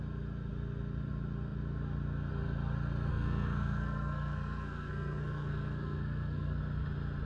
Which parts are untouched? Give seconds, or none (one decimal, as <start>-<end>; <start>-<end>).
0.0-3.1; 6.6-7.3